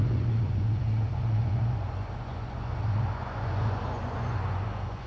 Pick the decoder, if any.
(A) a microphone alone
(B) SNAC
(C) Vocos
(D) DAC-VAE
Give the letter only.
C